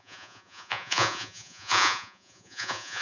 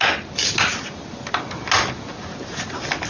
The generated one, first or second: first